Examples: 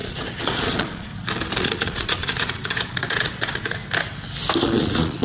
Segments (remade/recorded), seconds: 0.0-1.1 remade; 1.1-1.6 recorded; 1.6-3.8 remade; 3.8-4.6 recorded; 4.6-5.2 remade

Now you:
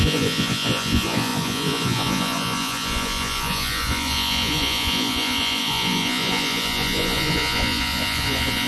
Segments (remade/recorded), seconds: 0.0-8.7 remade

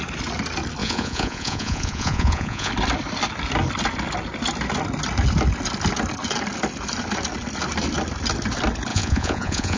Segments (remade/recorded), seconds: 0.0-0.8 recorded; 0.8-2.7 remade; 2.7-8.9 recorded; 8.9-9.8 remade

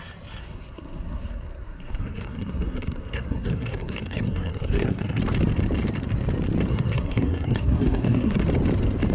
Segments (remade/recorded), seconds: 0.0-0.4 recorded; 0.4-5.2 remade; 5.2-6.7 recorded; 6.7-8.4 remade; 8.4-9.1 recorded

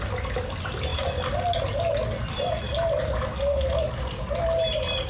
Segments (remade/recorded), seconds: 0.0-5.1 recorded

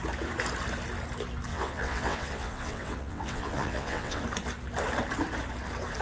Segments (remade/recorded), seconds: 0.0-1.5 recorded; 1.5-4.2 remade; 4.2-6.0 recorded

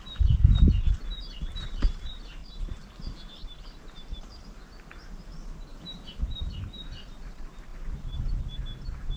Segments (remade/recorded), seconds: 0.0-2.4 recorded; 2.4-2.9 remade; 2.9-3.4 recorded; 3.4-4.4 remade; 4.4-7.7 recorded; 7.7-8.4 remade; 8.4-9.2 recorded